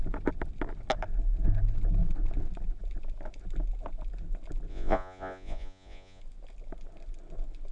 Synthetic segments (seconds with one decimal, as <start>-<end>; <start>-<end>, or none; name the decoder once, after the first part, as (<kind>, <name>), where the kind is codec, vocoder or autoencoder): 4.7-6.2 (vocoder, Vocos)